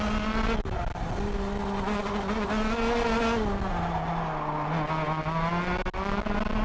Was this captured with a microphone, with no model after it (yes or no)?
yes